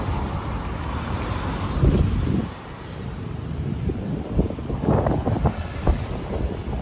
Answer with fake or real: real